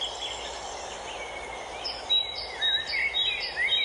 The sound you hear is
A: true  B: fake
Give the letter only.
A